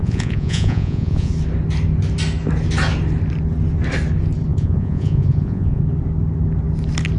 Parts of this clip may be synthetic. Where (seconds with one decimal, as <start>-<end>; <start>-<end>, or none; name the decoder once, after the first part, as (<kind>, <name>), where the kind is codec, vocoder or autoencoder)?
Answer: 0.0-1.3 (vocoder, Vocos); 4.5-5.8